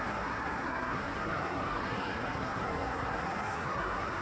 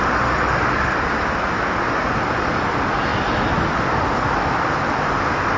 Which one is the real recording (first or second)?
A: second